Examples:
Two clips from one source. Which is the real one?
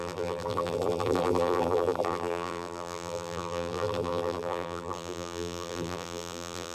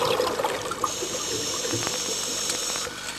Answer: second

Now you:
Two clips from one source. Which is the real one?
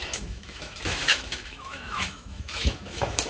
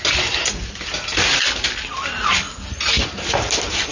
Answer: second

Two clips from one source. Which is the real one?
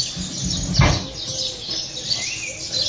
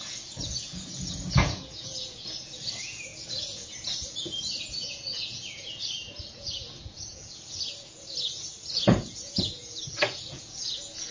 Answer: first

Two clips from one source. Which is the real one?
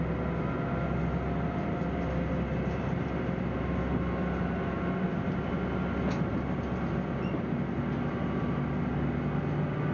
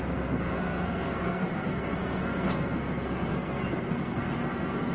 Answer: first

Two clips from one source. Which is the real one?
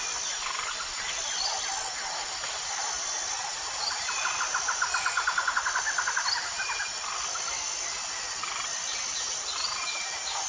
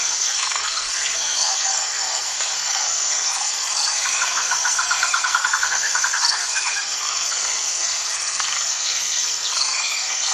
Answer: first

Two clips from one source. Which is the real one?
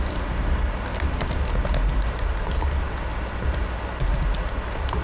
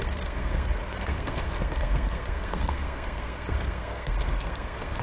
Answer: first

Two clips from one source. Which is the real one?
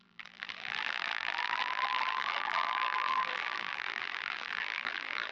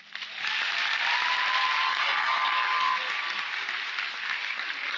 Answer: second